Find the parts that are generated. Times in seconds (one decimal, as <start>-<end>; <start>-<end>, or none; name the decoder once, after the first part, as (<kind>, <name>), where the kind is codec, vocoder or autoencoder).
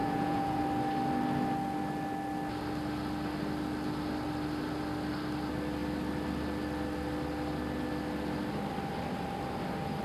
0.0-0.6 (vocoder, Vocos)